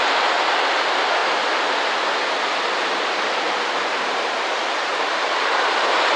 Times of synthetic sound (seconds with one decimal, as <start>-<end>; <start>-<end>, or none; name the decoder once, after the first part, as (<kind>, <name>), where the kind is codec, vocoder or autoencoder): none